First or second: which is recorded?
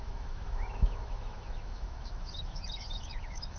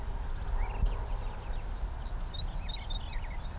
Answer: second